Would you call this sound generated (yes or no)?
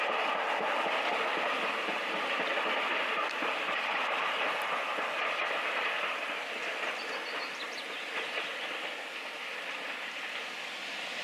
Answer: no